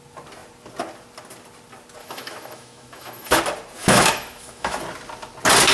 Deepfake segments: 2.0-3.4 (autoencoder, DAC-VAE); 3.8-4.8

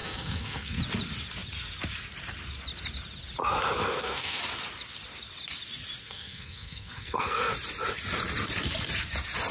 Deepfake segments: 0.0-0.8 (codec, SNAC); 3.8-4.4; 6.0-7.5

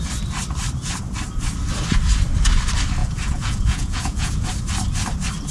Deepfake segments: 3.0-4.5 (vocoder, Vocos)

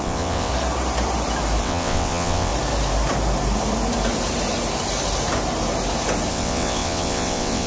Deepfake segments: 0.0-0.5 (vocoder, WaveNeXt); 1.6-2.5; 6.3-7.7

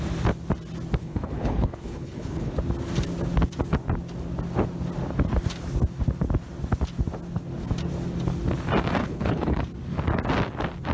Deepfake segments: 1.0-2.5 (codec, HILCodec); 9.0-9.6

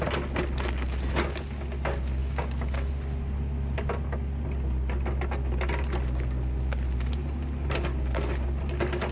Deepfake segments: 2.2-2.9 (codec, DAC)

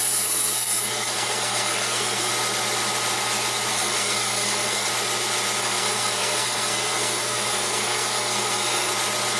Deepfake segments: 0.0-2.3 (codec, SNAC); 3.7-4.9; 5.6-8.9